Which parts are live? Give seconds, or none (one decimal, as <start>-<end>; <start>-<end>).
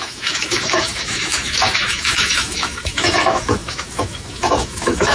none